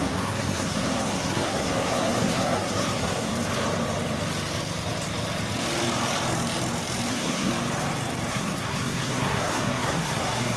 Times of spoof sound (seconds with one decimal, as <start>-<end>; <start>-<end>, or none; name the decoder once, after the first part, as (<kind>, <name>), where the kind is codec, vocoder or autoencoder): 0.0-3.3 (codec, SNAC); 7.1-7.5; 8.3-10.6